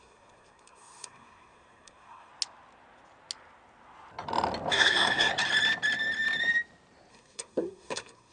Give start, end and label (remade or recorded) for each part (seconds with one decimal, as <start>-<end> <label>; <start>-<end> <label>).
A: 0.0-2.3 remade; 2.3-4.7 recorded; 4.7-5.3 remade; 5.3-7.1 recorded; 7.1-8.3 remade